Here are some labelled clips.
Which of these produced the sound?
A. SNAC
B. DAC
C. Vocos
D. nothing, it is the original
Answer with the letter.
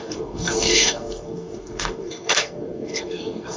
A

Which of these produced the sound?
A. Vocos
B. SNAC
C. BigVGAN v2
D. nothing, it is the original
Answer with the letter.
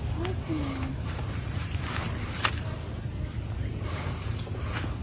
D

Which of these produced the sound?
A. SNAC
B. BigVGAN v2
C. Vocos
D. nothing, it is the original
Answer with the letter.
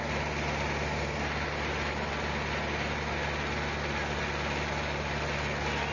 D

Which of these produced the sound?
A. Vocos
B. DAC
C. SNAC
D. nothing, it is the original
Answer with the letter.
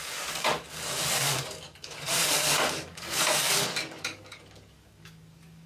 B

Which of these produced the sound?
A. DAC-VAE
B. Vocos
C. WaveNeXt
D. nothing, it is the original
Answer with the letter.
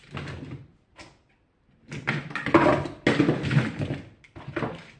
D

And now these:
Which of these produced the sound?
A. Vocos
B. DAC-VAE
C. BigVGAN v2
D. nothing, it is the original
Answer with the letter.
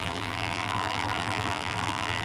C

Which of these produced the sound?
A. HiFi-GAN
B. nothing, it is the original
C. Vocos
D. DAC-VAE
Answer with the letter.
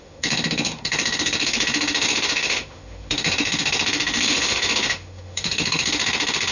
D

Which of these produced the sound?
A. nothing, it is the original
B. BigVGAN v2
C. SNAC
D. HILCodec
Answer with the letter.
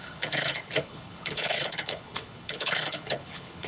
D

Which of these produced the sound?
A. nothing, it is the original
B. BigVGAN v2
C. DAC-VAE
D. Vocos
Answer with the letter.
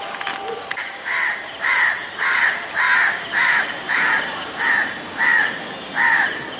B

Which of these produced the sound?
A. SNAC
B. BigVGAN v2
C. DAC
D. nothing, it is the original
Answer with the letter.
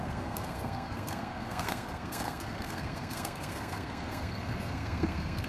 A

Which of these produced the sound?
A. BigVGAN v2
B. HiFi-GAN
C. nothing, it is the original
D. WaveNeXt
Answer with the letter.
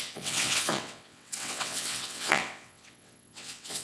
D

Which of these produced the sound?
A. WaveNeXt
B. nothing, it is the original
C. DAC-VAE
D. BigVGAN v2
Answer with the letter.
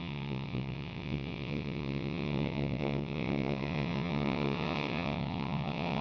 A